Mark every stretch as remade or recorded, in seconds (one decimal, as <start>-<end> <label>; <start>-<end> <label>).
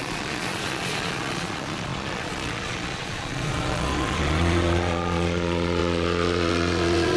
0.0-7.2 remade